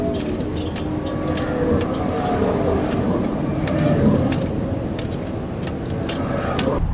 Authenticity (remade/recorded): recorded